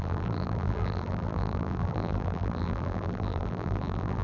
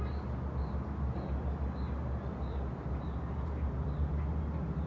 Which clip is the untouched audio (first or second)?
second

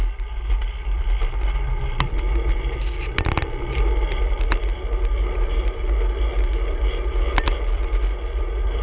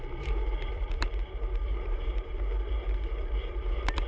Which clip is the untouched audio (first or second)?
first